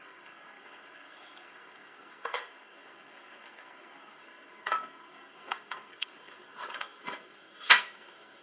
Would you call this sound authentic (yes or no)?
no